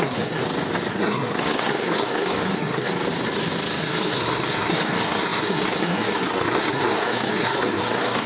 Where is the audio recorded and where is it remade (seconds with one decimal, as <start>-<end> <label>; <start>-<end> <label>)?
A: 0.0-0.4 remade; 0.4-0.9 recorded; 0.9-2.9 remade; 2.9-3.8 recorded; 3.8-8.3 remade